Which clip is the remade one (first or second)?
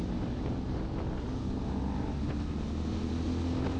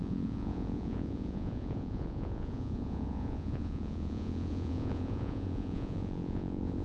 second